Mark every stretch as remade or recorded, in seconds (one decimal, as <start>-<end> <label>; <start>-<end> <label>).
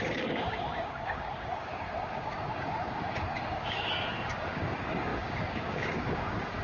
0.0-6.6 remade